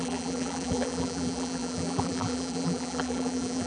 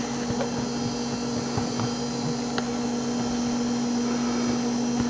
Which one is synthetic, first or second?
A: first